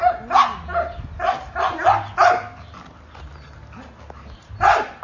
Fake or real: real